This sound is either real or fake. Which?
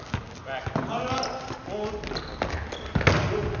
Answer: real